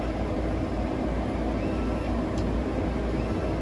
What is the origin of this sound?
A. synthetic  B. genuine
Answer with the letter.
B